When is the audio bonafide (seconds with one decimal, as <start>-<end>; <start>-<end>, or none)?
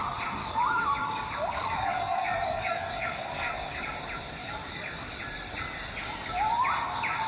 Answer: 0.0-0.4; 3.8-4.4; 5.2-7.3